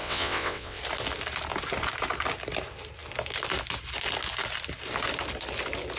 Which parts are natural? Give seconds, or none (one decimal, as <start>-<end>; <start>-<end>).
0.8-6.0